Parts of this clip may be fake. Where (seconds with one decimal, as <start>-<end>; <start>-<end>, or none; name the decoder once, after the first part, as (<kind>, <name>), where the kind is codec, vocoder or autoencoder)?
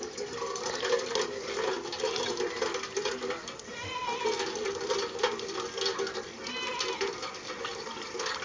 none